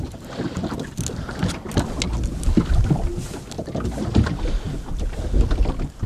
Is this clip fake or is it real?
real